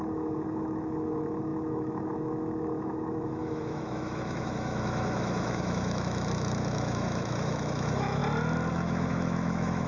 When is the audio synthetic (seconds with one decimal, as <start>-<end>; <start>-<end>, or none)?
0.0-8.2; 8.7-9.9